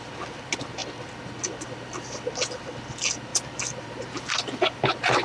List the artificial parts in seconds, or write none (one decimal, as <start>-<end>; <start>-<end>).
3.3-4.3